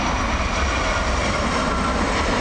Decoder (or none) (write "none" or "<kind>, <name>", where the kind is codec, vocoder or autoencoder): none